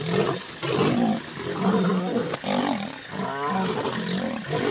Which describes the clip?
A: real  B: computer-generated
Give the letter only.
A